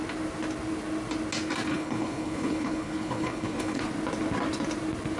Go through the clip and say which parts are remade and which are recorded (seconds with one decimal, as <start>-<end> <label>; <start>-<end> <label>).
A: 0.0-1.7 recorded; 1.7-3.8 remade; 3.8-5.2 recorded